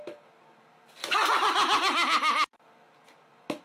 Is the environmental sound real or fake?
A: real